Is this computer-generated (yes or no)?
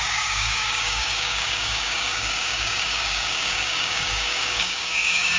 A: yes